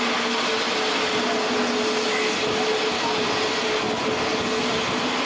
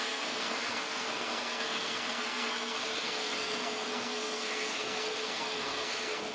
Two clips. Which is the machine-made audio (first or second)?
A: second